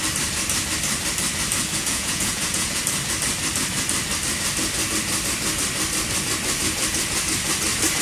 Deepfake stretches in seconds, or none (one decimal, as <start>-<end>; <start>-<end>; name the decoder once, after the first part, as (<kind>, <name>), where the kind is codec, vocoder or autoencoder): 1.8-2.8 (vocoder, Vocos)